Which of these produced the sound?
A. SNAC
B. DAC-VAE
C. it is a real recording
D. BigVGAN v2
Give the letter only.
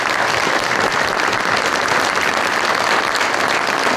C